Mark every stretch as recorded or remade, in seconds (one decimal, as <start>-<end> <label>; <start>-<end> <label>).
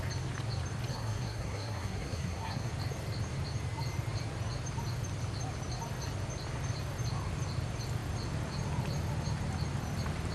0.0-0.9 recorded; 0.9-2.7 remade; 2.7-10.3 recorded